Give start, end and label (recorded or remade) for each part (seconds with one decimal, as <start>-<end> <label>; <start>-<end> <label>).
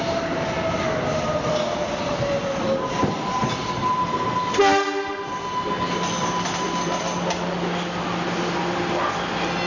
0.0-9.7 recorded